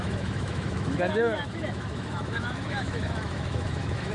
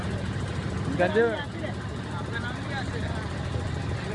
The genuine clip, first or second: second